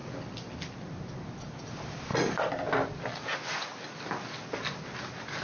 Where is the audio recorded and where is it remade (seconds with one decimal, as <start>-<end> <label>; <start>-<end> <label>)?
0.0-5.4 recorded